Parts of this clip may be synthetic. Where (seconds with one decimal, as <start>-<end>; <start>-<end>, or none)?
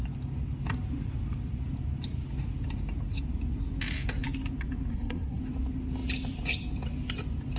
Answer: 4.9-5.4